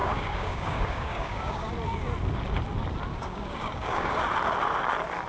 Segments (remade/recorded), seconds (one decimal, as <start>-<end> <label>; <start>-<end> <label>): 0.0-1.7 remade; 1.7-3.1 recorded; 3.1-4.1 remade; 4.1-5.3 recorded